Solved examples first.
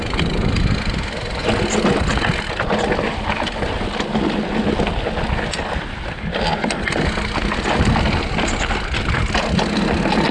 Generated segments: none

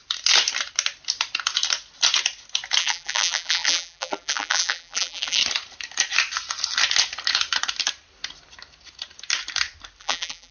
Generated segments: 2.8-5.4; 10.0-10.5

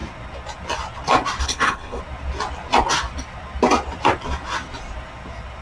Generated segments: 1.4-2.0

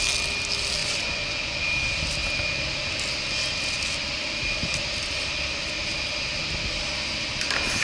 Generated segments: 0.8-1.6

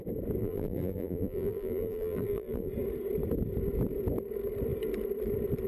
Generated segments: 0.4-2.7

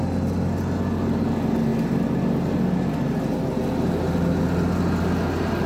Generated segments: none